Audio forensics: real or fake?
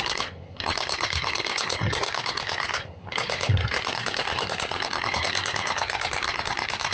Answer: fake